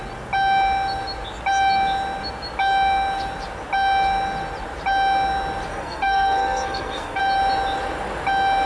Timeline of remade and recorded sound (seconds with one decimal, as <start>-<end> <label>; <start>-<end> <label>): 0.0-5.7 recorded; 5.7-7.2 remade; 7.2-8.7 recorded